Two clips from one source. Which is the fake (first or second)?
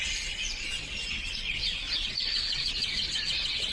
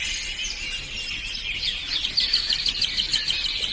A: first